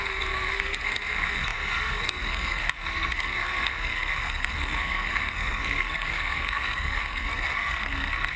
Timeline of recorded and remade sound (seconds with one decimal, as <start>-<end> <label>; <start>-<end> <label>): 0.0-8.4 remade